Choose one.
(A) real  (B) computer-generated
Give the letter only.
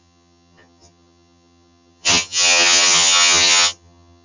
B